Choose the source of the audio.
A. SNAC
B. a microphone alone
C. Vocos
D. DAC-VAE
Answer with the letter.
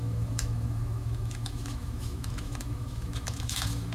D